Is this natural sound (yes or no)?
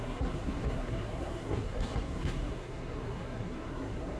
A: no